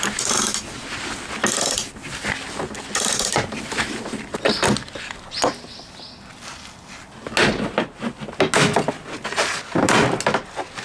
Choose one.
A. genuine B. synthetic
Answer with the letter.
A